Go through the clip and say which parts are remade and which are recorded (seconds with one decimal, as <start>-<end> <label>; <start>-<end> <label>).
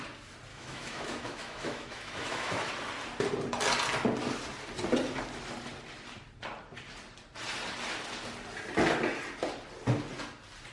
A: 0.0-0.5 recorded; 0.5-2.7 remade; 2.7-10.7 recorded